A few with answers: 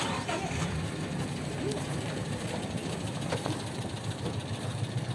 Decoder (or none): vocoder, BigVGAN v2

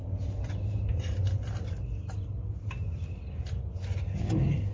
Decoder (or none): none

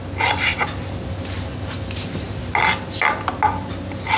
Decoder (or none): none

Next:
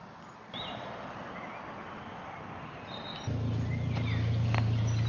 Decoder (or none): none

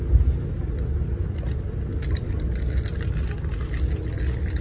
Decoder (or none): none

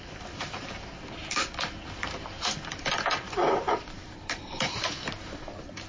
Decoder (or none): vocoder, BigVGAN v2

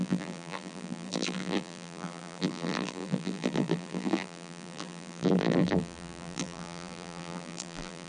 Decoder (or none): vocoder, BigVGAN v2